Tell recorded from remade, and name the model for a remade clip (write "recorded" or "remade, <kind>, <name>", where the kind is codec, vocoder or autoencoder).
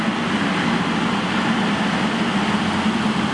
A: recorded